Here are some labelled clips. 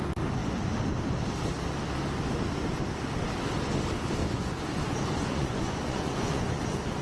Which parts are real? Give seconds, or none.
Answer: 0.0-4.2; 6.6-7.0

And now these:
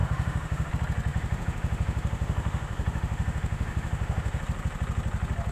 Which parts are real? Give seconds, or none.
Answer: 0.7-1.1; 4.4-5.5

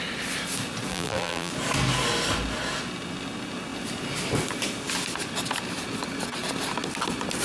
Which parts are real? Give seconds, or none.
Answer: 0.0-0.9; 1.5-7.4

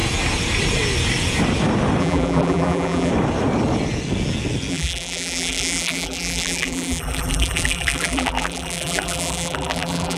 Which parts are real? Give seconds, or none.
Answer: 0.0-2.0; 3.1-4.7

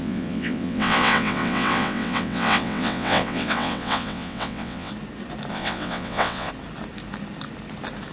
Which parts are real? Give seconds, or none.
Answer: 4.9-5.5; 6.5-8.1